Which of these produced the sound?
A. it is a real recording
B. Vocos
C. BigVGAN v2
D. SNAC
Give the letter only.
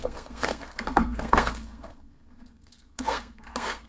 D